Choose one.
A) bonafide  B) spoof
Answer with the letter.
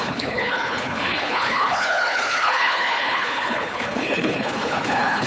B